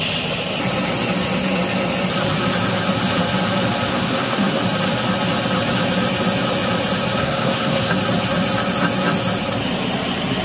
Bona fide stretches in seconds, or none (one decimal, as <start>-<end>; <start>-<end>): 0.0-3.9; 4.6-7.2; 7.9-10.4